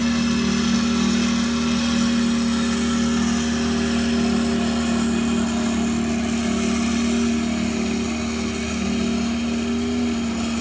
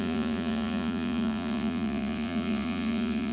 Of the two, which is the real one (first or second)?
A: first